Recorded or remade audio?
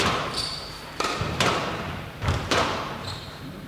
remade